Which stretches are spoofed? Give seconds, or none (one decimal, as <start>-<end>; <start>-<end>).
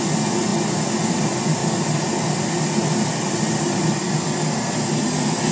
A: none